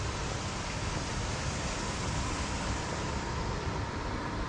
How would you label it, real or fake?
real